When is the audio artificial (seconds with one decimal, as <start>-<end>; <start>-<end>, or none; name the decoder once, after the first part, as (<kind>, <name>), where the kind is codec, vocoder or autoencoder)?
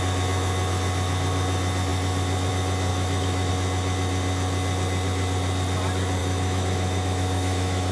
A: 2.9-3.5 (autoencoder, DAC-VAE); 6.2-7.9